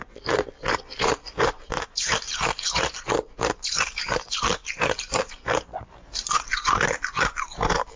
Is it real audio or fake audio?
fake